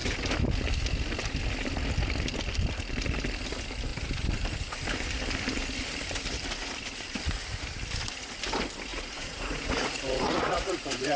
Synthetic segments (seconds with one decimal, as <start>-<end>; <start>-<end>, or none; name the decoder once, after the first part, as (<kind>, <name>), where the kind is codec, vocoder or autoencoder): 8.9-11.2 (vocoder, Vocos)